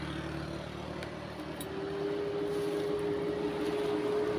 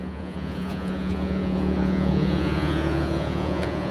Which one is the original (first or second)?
first